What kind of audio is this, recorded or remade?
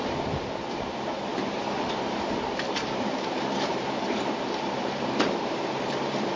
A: remade